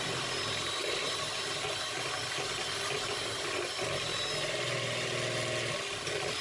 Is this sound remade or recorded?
recorded